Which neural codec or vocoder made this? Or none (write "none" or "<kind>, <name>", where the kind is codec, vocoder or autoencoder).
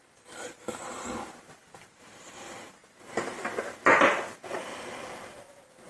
none